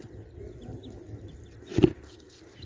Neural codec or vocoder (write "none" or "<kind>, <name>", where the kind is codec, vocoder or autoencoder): none